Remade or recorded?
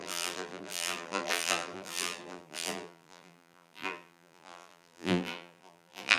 remade